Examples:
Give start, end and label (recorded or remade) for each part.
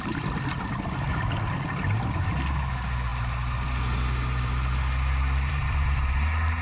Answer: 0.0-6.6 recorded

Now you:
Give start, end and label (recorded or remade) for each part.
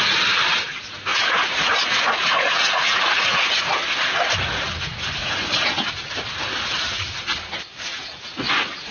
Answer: 0.0-1.1 recorded; 1.1-3.4 remade; 3.4-5.2 recorded; 5.2-5.9 remade; 5.9-7.9 recorded; 7.9-8.9 remade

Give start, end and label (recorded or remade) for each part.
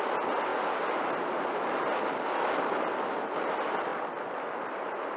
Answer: 0.0-5.2 recorded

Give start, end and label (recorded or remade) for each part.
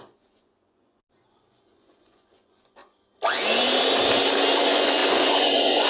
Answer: 0.0-2.8 remade; 2.8-4.6 recorded; 4.6-5.9 remade